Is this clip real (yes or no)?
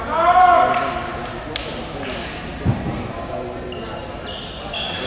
yes